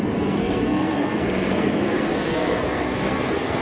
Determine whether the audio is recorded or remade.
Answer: remade